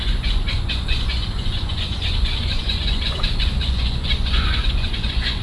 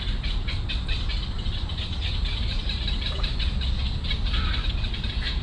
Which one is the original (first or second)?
second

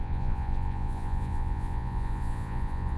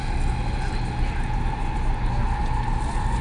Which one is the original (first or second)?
second